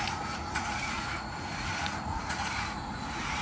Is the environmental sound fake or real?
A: fake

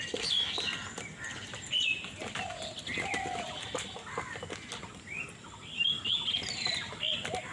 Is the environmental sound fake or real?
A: real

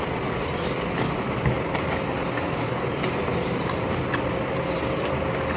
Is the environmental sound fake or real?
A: real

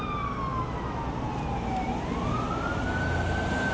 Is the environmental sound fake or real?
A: real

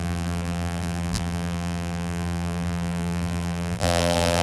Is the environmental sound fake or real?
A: fake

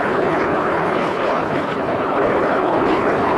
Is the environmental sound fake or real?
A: fake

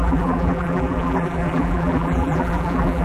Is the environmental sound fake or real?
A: fake